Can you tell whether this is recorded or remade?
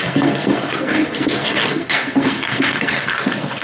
remade